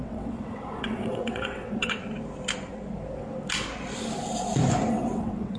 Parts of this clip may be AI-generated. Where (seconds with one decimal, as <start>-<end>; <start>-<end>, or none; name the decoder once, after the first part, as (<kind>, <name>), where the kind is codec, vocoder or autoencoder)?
0.0-2.0 (vocoder, WaveNeXt); 4.9-5.6